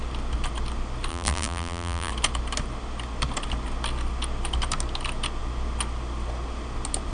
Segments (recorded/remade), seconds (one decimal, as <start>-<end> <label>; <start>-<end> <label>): 0.0-1.1 recorded; 1.1-2.1 remade; 2.1-7.1 recorded